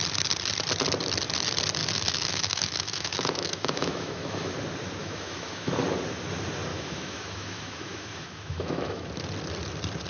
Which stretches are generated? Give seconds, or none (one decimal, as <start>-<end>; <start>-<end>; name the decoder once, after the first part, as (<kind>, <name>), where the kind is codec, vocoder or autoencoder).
1.8-4.5 (autoencoder, DAC-VAE); 5.0-5.7; 6.7-9.1